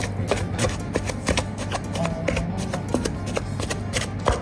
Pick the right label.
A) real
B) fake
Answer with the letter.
A